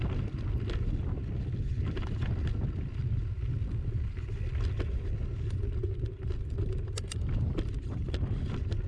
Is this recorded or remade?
recorded